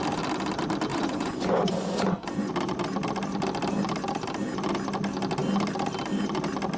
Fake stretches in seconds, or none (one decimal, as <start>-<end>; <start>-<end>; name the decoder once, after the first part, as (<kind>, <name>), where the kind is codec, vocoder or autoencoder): 0.9-2.5 (vocoder, Vocos)